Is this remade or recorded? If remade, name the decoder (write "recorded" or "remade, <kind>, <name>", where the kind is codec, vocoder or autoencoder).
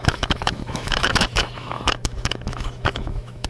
remade, autoencoder, DAC-VAE